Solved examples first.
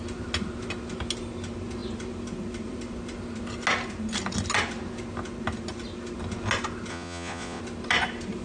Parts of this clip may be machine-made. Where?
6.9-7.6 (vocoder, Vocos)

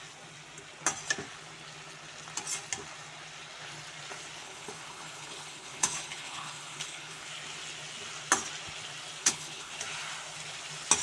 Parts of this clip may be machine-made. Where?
4.4-7.3 (codec, HILCodec); 9.2-9.7

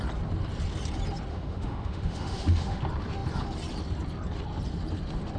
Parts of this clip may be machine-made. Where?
1.3-2.8 (autoencoder, DAC-VAE)

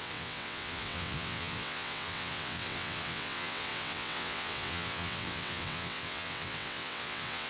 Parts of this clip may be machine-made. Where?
0.0-7.5 (vocoder, WaveNeXt)

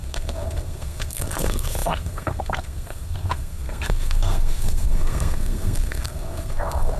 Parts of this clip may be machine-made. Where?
0.0-7.0 (codec, SNAC)

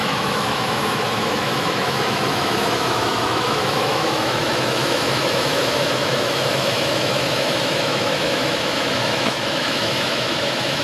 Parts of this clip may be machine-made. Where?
0.0-10.8 (autoencoder, DAC-VAE)